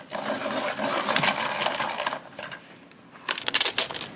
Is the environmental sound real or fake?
real